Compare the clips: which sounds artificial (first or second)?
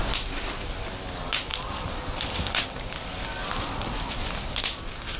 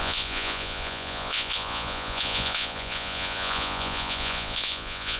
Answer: second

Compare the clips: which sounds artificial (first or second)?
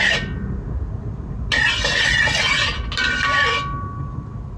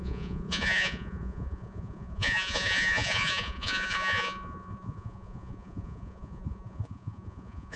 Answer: second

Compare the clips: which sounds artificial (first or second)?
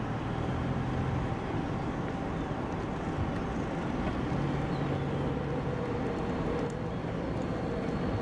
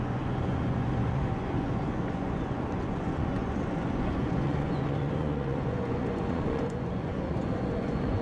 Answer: second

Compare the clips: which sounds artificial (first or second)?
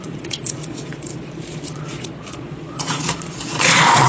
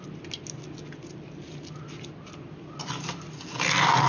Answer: first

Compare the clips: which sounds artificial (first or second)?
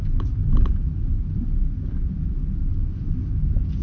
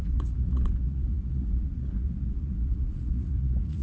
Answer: second